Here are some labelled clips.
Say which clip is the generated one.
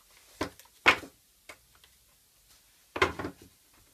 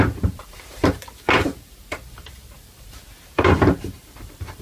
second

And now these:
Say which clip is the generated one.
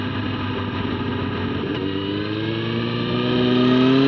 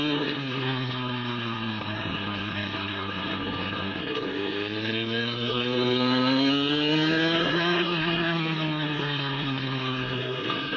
second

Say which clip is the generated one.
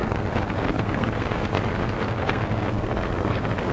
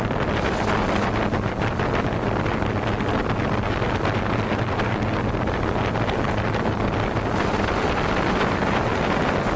first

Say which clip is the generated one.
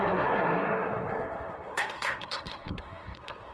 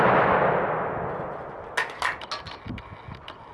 first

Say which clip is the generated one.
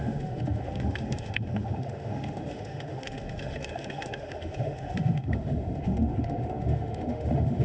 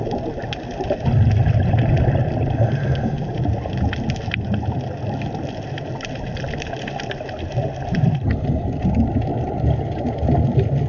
first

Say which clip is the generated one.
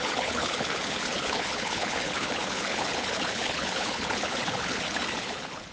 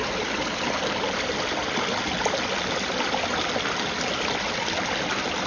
first